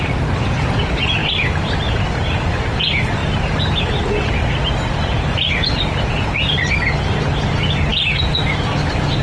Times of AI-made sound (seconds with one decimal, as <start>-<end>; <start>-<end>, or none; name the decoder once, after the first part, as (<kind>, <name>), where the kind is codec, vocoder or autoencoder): 1.2-1.9 (vocoder, BigVGAN v2); 7.9-9.2